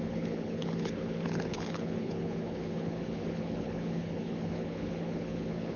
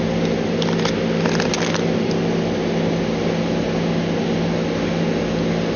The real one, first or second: second